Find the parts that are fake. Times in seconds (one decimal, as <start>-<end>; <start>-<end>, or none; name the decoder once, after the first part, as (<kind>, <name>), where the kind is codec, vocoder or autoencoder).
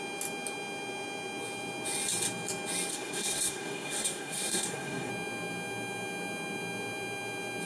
2.9-5.1 (codec, SNAC)